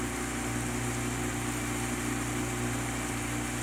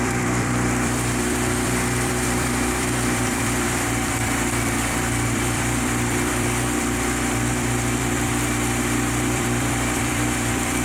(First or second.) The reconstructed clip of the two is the second